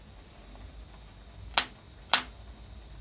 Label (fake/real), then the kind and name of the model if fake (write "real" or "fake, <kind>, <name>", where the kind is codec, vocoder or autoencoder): real